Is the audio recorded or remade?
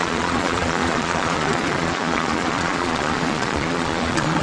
remade